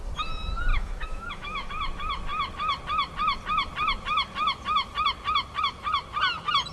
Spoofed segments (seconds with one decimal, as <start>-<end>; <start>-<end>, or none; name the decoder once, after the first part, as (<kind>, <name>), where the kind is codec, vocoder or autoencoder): 0.7-1.7 (autoencoder, DAC-VAE)